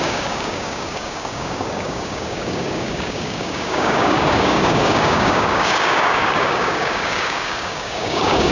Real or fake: fake